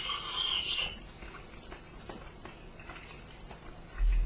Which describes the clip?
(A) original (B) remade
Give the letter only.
A